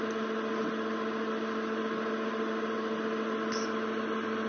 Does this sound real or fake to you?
real